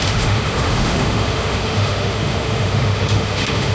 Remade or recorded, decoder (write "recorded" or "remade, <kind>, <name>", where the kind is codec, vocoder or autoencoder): remade, autoencoder, DAC-VAE